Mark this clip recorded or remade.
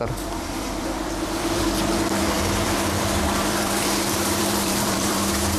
remade